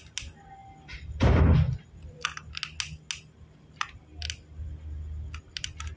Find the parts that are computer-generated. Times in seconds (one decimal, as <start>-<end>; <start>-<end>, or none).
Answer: none